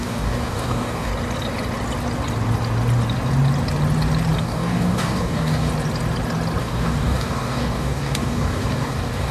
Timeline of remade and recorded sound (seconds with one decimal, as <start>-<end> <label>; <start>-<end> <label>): 0.0-1.1 remade; 1.1-4.4 recorded; 4.4-5.7 remade; 5.7-6.6 recorded; 6.6-9.3 remade